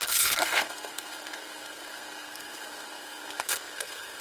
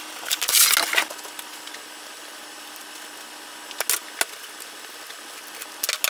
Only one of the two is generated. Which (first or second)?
first